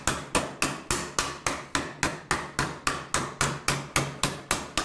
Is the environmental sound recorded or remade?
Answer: recorded